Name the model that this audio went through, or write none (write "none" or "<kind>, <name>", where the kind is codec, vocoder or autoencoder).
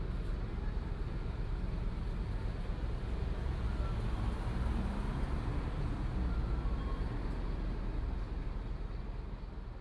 none